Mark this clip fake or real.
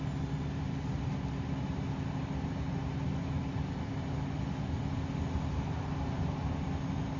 real